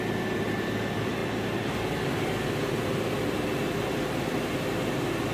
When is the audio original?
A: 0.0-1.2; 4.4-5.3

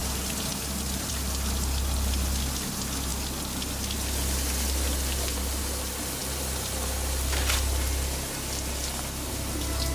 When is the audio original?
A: 0.0-9.9